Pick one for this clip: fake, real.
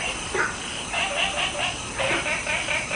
real